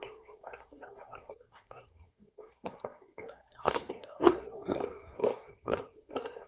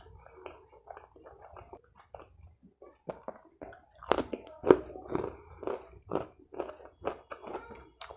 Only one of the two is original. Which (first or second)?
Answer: second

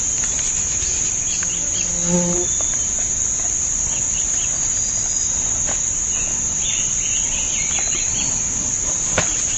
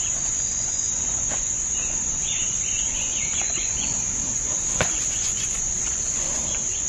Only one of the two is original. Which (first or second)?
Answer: first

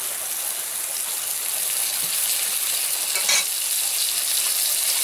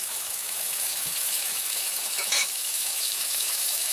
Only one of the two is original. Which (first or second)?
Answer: first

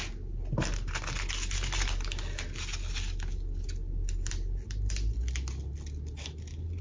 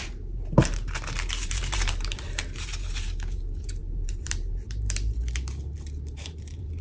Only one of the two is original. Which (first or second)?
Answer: first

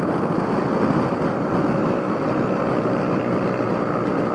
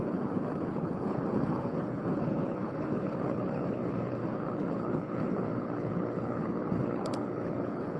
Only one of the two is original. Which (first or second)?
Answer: first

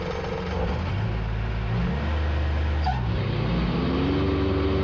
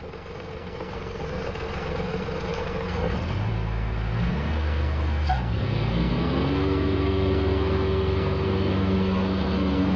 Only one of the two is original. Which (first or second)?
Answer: first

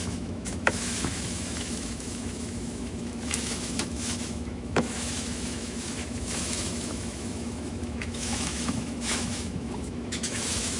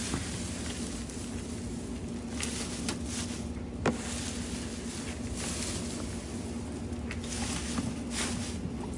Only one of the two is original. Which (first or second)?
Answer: second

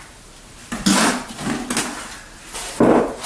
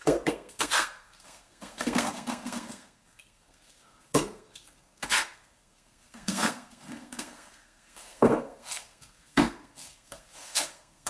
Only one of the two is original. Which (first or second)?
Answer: first